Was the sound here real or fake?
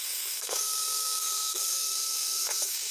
fake